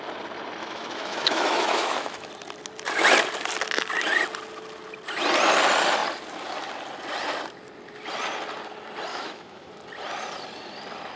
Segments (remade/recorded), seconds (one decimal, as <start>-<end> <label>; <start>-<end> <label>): 0.0-0.6 recorded; 0.6-2.3 remade; 2.3-9.1 recorded; 9.1-9.7 remade; 9.7-11.2 recorded